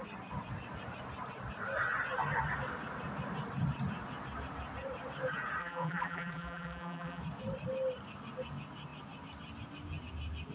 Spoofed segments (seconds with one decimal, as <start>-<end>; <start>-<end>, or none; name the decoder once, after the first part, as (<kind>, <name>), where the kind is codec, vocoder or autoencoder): 5.6-7.2 (vocoder, BigVGAN v2)